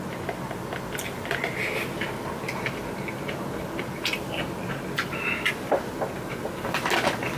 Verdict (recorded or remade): recorded